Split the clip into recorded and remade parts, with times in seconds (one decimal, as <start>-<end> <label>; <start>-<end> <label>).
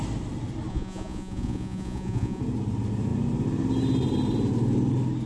0.0-0.7 recorded; 0.7-2.4 remade; 2.4-5.3 recorded